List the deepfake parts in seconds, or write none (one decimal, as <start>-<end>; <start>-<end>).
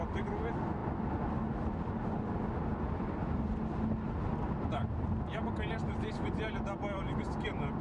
none